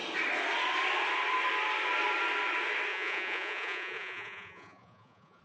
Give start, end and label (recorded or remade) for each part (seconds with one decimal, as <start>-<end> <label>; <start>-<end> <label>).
0.0-2.9 recorded; 2.9-5.4 remade